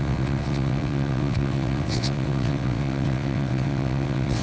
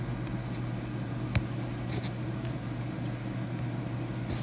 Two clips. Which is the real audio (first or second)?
second